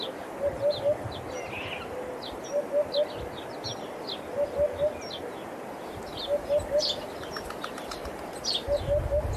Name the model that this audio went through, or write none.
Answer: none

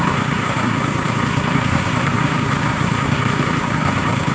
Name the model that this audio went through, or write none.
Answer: codec, SNAC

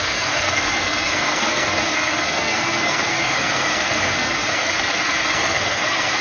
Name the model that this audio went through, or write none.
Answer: codec, SNAC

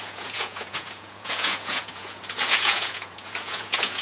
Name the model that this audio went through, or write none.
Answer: vocoder, Vocos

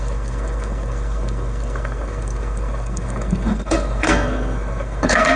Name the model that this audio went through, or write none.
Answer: codec, SNAC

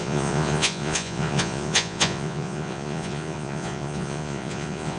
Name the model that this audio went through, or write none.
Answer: vocoder, Vocos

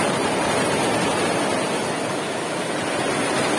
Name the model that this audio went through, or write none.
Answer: none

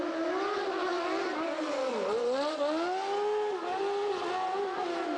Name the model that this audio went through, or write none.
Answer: none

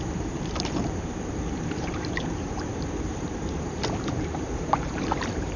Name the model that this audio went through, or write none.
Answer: vocoder, BigVGAN v2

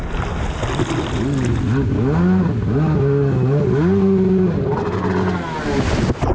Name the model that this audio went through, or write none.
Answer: none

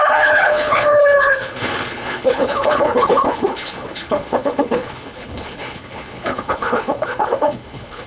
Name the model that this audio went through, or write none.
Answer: codec, HILCodec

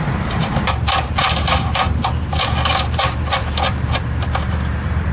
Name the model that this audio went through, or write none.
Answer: vocoder, BigVGAN v2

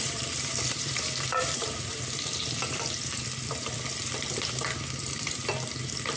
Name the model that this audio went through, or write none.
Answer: vocoder, BigVGAN v2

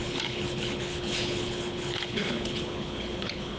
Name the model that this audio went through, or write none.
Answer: codec, HILCodec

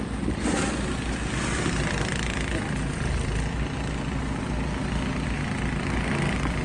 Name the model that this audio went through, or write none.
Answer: none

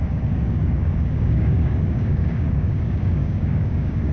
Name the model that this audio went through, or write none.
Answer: codec, DAC